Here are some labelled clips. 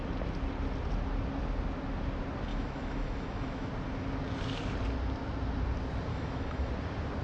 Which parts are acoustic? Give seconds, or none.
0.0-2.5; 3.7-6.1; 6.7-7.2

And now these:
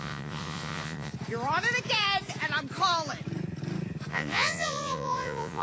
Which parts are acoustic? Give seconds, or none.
1.1-4.1

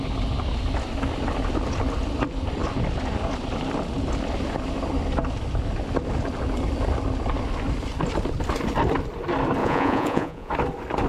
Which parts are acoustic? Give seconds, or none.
0.0-9.6; 10.5-11.1

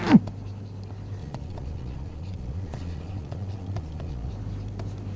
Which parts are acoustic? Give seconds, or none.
0.0-1.2; 4.3-5.2

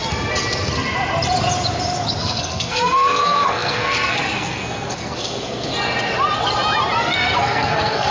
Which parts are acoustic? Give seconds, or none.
0.0-2.2; 5.7-7.0

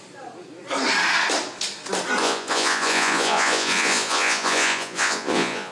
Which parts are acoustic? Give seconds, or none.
0.0-2.2

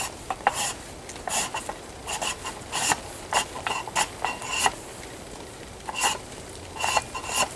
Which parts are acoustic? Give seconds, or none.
0.0-7.6